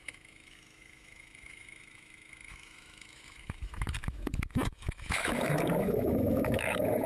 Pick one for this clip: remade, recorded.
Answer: remade